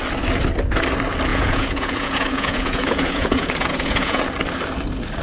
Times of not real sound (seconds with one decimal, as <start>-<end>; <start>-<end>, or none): 1.3-4.2